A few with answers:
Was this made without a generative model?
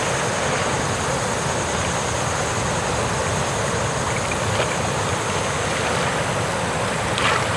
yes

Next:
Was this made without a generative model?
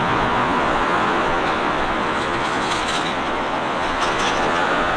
no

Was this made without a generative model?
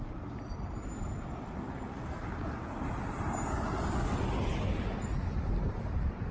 yes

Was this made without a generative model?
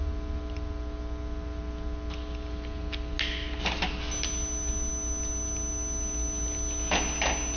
yes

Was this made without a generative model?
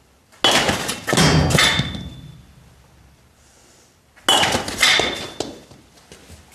yes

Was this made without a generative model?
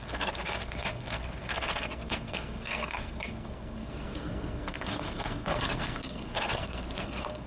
no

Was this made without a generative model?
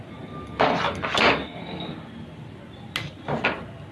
yes